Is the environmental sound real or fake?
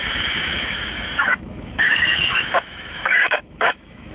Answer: fake